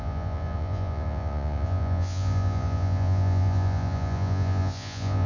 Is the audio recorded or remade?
remade